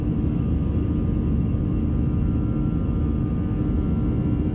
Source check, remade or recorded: recorded